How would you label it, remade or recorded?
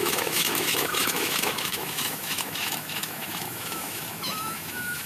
remade